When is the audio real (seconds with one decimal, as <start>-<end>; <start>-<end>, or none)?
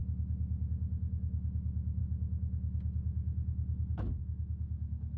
0.7-5.2